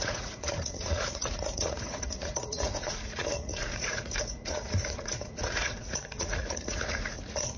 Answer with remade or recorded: remade